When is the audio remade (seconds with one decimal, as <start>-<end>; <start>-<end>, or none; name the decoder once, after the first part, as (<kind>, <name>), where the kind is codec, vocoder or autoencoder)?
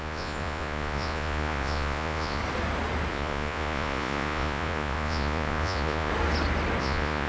0.0-2.4 (vocoder, Vocos); 3.1-6.1; 6.8-7.3